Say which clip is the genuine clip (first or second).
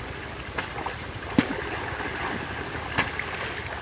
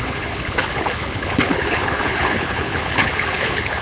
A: first